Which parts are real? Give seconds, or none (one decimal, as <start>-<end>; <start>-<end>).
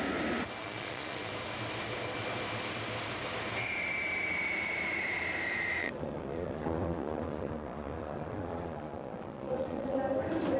0.0-0.6; 1.3-5.8; 10.0-10.6